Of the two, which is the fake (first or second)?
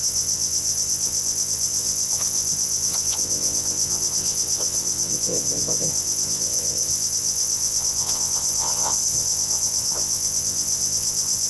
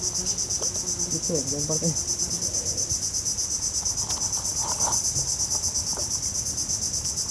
first